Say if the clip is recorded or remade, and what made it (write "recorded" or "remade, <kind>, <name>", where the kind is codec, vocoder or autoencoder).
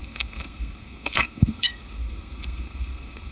remade, codec, SNAC